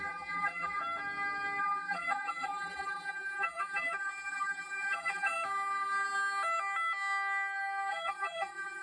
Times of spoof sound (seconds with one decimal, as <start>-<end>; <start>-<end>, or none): 0.0-0.8; 1.6-5.3; 7.9-8.8